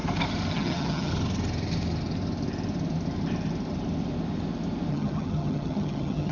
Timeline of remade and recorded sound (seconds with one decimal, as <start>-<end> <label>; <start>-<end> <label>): 0.0-0.5 recorded; 0.5-1.1 remade; 1.1-4.9 recorded; 4.9-6.3 remade